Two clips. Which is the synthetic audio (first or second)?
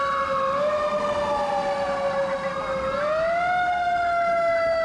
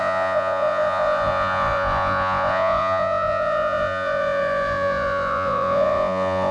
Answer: second